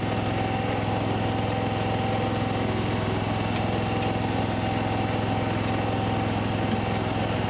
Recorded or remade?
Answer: recorded